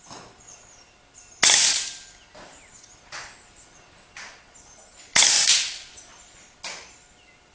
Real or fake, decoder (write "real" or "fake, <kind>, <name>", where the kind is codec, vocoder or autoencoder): real